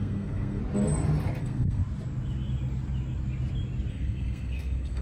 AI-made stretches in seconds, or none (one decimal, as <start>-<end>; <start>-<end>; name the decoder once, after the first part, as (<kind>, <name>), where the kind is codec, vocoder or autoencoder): 0.0-0.6 (codec, SNAC); 1.4-1.8; 3.9-5.0